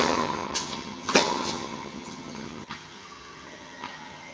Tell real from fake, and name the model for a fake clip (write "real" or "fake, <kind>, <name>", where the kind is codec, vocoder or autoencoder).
fake, vocoder, HiFi-GAN